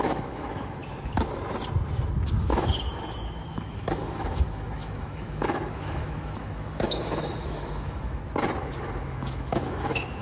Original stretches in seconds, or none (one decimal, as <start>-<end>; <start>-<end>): 0.8-2.4; 8.2-9.0